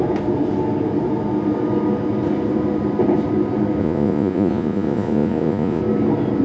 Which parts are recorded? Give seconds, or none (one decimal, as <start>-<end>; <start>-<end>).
0.0-3.8; 5.8-6.4